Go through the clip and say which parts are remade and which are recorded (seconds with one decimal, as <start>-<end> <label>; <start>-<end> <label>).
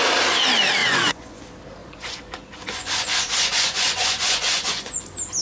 0.0-0.8 recorded; 0.8-1.4 remade; 1.4-1.8 recorded; 1.8-5.0 remade; 5.0-5.4 recorded